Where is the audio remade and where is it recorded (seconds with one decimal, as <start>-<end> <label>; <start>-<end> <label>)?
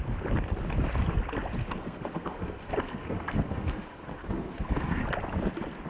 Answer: 0.0-1.8 recorded; 1.8-5.0 remade; 5.0-5.9 recorded